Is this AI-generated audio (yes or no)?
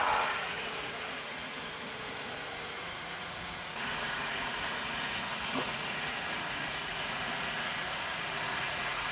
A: yes